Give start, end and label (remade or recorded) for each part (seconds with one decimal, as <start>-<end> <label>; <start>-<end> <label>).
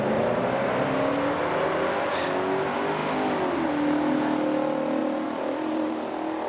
0.0-5.0 recorded; 5.0-6.1 remade; 6.1-6.5 recorded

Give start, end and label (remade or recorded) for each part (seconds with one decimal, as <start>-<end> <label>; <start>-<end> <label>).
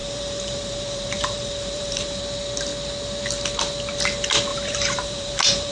0.0-2.2 remade; 2.2-4.5 recorded; 4.5-5.7 remade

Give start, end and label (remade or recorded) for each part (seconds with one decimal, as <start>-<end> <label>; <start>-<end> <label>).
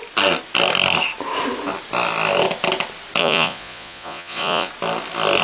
0.0-3.2 recorded; 3.2-4.7 remade; 4.7-5.4 recorded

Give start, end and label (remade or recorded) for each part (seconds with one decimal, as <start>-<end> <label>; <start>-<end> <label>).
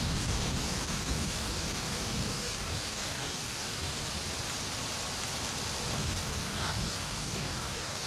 0.0-4.0 remade; 4.0-5.9 recorded; 5.9-8.1 remade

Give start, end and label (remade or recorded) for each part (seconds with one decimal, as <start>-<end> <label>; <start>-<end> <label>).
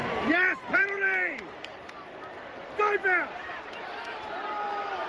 0.0-2.8 remade; 2.8-5.1 recorded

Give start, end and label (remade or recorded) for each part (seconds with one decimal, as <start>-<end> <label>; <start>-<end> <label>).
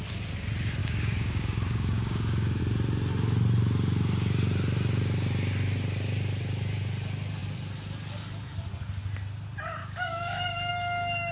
0.0-0.8 recorded; 0.8-2.6 remade; 2.6-9.8 recorded; 9.8-10.7 remade; 10.7-11.3 recorded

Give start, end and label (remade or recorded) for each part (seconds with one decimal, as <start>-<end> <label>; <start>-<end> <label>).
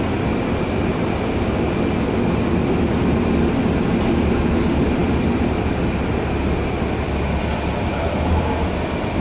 0.0-9.2 recorded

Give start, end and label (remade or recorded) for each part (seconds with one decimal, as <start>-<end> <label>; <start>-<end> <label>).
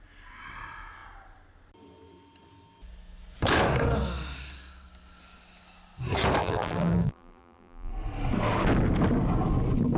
0.0-6.4 recorded; 6.4-7.9 remade; 7.9-10.0 recorded